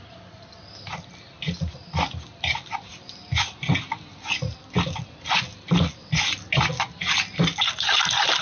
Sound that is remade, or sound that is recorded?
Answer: recorded